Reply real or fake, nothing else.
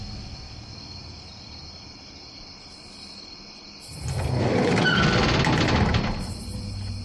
real